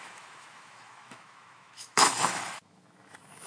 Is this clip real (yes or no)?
no